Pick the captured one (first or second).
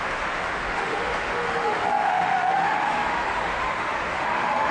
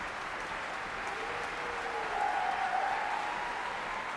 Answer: second